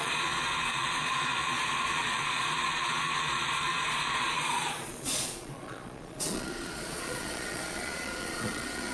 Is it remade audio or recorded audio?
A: remade